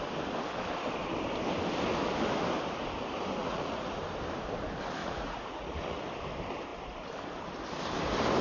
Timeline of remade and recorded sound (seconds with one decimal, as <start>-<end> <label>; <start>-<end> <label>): 0.0-3.4 recorded; 3.4-4.0 remade; 4.0-5.0 recorded; 5.0-6.1 remade; 6.1-8.4 recorded